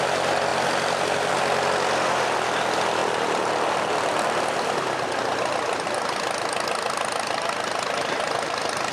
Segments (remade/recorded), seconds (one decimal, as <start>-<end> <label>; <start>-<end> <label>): 0.0-3.0 recorded; 3.0-4.4 remade; 4.4-8.9 recorded